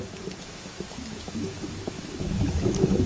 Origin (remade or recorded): remade